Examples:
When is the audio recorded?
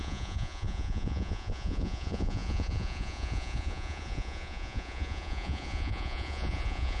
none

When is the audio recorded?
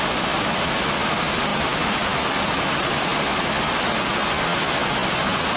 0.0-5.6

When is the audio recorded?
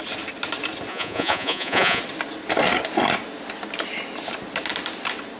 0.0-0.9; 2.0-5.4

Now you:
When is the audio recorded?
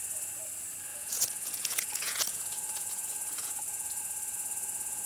0.0-0.9; 4.0-5.1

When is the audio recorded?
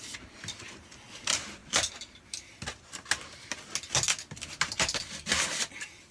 0.0-6.1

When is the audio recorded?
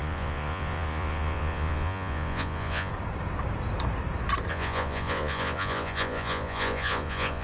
2.9-4.5